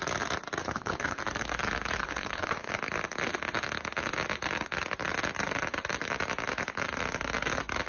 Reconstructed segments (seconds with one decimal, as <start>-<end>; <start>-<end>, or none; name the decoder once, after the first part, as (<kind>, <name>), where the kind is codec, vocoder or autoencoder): 0.6-1.2 (codec, HILCodec); 2.0-2.7